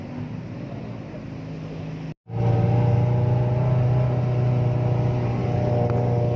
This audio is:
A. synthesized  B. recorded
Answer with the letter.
B